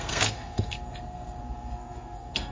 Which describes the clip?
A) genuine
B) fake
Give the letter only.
B